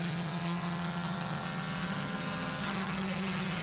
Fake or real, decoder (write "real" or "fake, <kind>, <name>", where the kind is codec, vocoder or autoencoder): fake, vocoder, HiFi-GAN